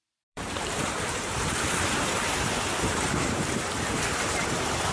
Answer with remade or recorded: remade